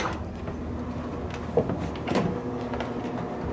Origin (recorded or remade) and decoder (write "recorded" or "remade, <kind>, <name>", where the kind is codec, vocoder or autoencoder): recorded